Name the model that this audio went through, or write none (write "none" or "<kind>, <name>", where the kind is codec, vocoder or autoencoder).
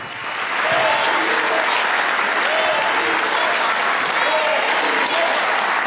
none